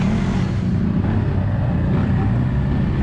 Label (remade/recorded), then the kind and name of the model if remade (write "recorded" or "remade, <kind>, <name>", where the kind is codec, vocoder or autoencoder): recorded